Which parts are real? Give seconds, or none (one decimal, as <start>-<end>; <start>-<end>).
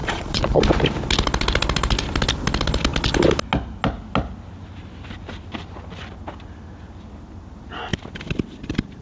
0.6-9.0